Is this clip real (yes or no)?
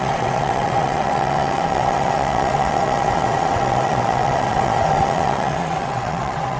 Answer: no